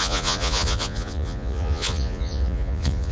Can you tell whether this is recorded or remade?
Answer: remade